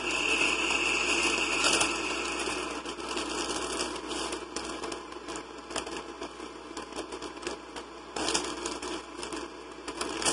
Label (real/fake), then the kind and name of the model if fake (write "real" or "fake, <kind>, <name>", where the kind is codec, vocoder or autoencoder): real